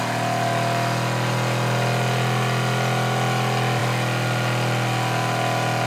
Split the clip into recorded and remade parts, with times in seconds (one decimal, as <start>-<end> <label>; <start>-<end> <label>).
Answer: 0.0-5.9 recorded